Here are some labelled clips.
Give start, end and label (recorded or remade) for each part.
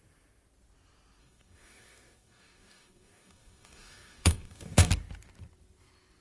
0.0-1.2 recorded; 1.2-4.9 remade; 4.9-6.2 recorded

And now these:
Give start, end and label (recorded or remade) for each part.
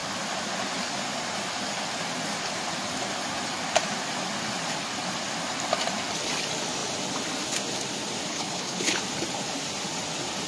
0.0-8.3 recorded; 8.3-9.0 remade; 9.0-10.5 recorded